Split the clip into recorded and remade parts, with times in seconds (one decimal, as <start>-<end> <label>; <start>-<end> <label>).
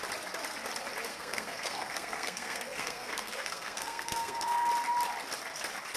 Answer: 0.0-1.1 recorded; 1.1-4.7 remade; 4.7-6.0 recorded